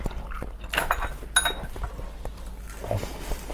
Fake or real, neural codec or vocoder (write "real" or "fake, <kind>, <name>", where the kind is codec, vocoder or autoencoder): real